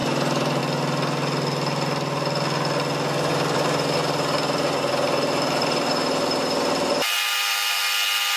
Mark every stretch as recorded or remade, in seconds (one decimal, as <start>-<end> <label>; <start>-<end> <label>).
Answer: 0.0-0.6 remade; 0.6-3.3 recorded; 3.3-7.8 remade; 7.8-8.4 recorded